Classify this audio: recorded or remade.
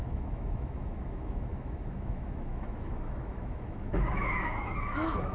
remade